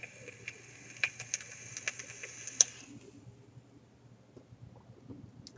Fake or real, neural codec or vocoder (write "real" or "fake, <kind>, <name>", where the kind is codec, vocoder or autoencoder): real